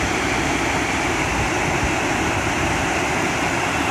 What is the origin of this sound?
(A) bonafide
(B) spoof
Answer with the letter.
A